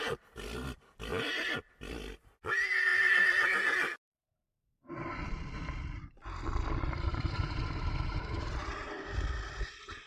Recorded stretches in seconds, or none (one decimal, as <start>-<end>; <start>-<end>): 0.0-7.1; 8.7-10.1

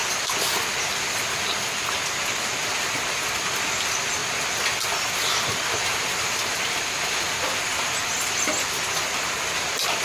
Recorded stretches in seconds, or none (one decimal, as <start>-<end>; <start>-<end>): 0.0-10.0

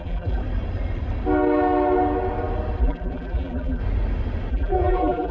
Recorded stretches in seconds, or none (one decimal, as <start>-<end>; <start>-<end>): 0.4-2.8; 3.8-4.5

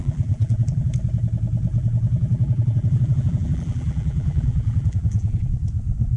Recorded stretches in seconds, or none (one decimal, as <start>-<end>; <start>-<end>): 0.9-1.7; 5.4-6.2